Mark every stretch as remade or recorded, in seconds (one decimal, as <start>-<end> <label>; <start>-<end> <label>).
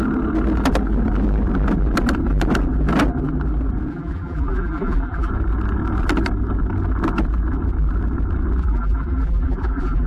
0.0-3.9 recorded; 3.9-5.3 remade; 5.3-8.6 recorded; 8.6-10.1 remade